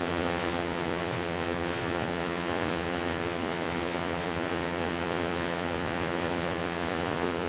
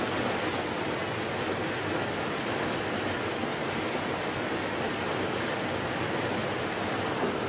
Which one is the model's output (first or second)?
first